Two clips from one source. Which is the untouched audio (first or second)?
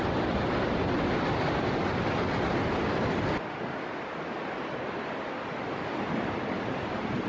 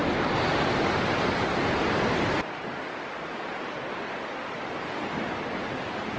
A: second